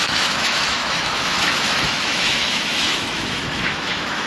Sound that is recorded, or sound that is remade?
remade